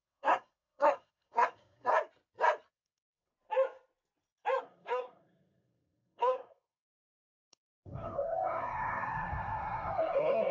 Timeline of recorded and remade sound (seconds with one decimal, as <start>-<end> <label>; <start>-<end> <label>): 0.0-1.9 remade; 1.9-2.7 recorded; 2.7-3.3 remade; 3.3-4.6 recorded; 4.6-10.5 remade